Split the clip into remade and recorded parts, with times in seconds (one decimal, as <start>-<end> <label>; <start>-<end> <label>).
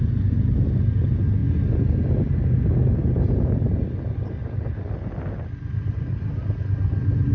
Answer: 0.0-7.3 recorded